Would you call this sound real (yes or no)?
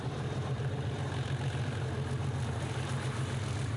no